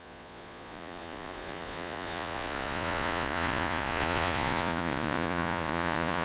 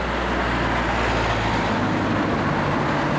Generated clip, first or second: first